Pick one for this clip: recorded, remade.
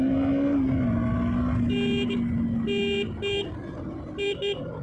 recorded